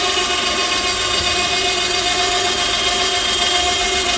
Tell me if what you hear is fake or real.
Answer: real